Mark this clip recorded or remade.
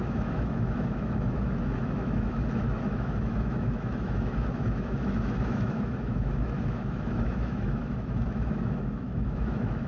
remade